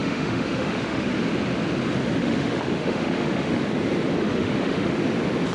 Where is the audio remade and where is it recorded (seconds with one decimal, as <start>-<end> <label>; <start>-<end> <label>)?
0.0-1.1 remade; 1.1-2.2 recorded; 2.2-3.6 remade; 3.6-4.2 recorded; 4.2-5.0 remade; 5.0-5.5 recorded